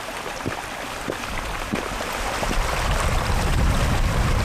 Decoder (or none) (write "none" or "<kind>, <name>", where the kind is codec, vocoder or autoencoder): vocoder, BigVGAN v2